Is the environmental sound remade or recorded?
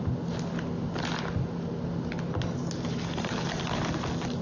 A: recorded